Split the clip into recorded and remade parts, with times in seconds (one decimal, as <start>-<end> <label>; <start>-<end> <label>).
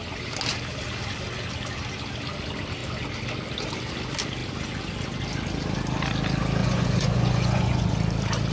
0.0-6.6 recorded; 6.6-7.9 remade; 7.9-8.5 recorded